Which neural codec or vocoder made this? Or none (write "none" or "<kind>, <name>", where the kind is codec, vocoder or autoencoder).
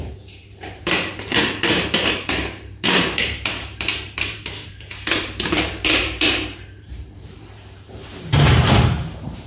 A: vocoder, BigVGAN v2